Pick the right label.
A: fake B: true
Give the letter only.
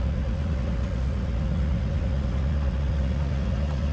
A